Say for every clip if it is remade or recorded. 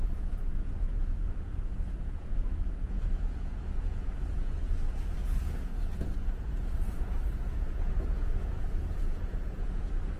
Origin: remade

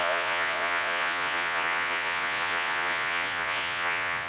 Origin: remade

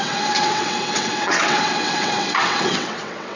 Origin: remade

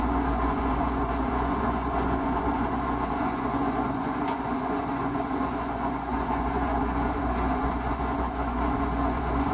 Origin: remade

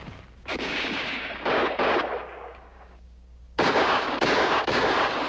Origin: remade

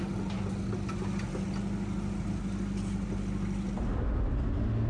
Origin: recorded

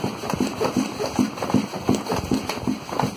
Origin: recorded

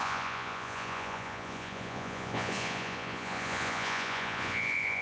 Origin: remade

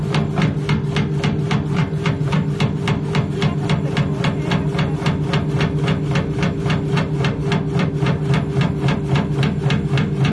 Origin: recorded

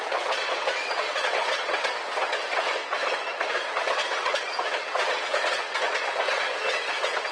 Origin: remade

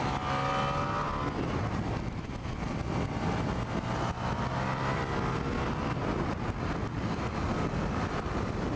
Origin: recorded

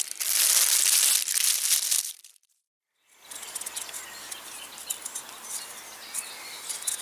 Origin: remade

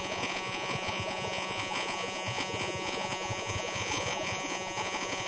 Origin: remade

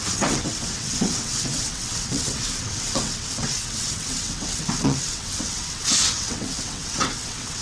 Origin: remade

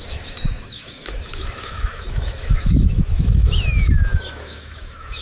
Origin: remade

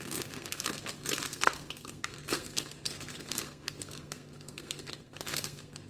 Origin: remade